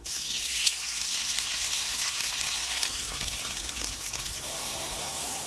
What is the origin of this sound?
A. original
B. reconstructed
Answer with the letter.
B